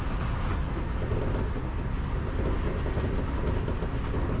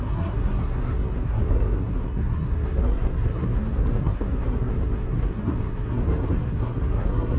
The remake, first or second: second